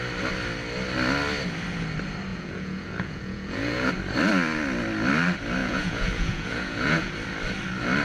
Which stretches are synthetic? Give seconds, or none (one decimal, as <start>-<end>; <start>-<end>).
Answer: 2.3-3.9; 5.6-7.1